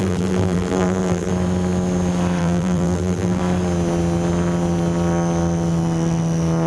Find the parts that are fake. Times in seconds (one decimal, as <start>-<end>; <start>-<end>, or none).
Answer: 0.0-1.3; 2.4-3.4